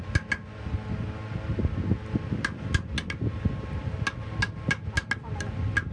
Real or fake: real